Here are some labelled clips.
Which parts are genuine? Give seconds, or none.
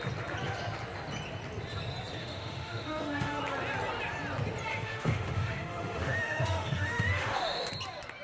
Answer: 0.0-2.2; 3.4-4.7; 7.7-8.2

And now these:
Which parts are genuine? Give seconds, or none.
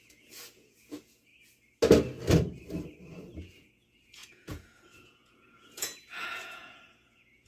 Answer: 1.3-3.4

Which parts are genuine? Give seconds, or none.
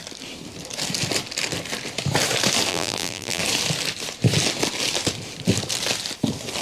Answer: 0.0-2.7; 3.4-6.6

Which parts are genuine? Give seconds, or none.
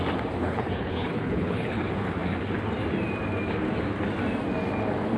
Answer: 0.0-0.4; 1.8-5.2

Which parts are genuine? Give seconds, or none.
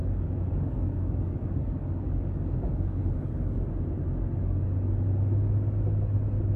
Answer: 3.7-6.6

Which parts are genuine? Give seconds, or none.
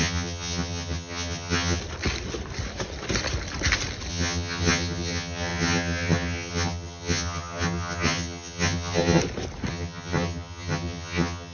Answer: 1.8-4.1; 9.2-9.7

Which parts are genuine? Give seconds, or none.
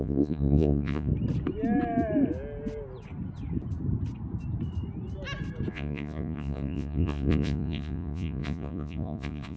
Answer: 1.1-5.7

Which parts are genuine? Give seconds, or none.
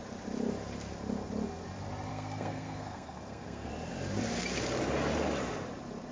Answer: 0.0-2.1; 3.7-6.1